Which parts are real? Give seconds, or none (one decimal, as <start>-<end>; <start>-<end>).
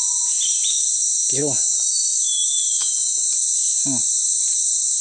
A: 0.0-1.4; 3.3-5.0